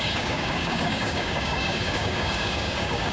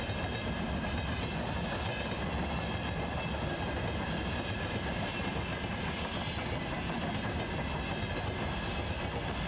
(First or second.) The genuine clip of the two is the second